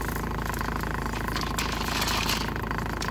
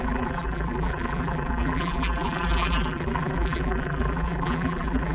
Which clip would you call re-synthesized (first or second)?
second